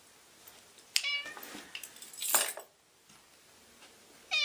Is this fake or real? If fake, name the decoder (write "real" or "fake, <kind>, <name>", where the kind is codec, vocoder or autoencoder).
real